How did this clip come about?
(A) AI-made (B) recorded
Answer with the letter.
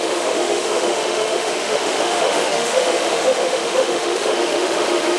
A